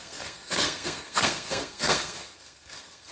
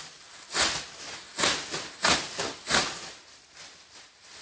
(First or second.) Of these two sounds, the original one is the second